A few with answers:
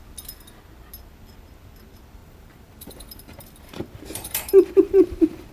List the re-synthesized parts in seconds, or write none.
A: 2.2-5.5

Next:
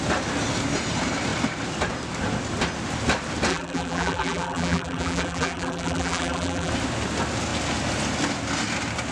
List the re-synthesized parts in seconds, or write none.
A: 3.5-6.7

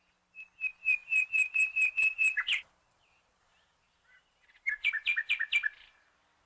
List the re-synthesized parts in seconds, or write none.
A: 1.0-4.9

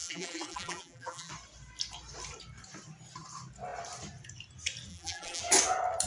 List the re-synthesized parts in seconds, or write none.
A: 0.0-1.3; 4.9-5.4

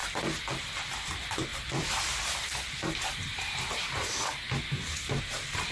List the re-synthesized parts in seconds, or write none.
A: 0.0-0.7; 1.5-4.3

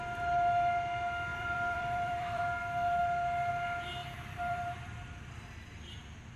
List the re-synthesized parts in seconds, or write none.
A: 1.3-2.4; 4.0-5.3